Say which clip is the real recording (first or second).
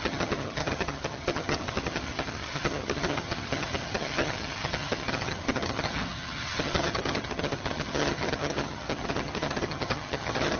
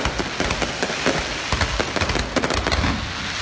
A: second